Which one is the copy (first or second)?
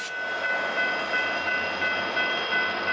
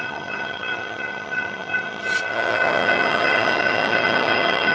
second